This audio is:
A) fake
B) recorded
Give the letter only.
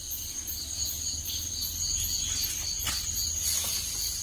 B